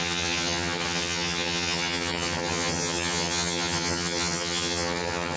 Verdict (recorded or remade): remade